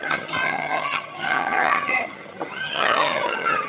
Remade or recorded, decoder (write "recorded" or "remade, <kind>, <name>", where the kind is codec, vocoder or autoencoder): remade, vocoder, HiFi-GAN